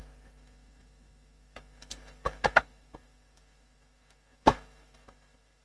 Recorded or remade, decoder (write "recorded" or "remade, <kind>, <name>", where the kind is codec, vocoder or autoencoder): remade, autoencoder, DAC-VAE